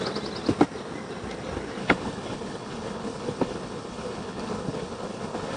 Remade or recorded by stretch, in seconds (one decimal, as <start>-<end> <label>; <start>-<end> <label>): 0.0-1.8 recorded; 1.8-5.6 remade